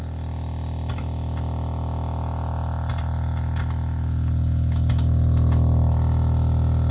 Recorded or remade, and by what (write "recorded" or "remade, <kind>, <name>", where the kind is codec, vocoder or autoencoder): recorded